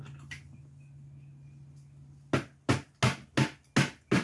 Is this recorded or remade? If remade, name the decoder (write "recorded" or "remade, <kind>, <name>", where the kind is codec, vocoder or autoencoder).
recorded